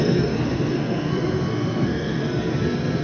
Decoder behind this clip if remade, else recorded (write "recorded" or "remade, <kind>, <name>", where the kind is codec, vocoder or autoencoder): remade, codec, SNAC